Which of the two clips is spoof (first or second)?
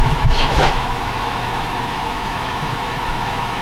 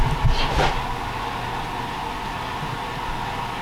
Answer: first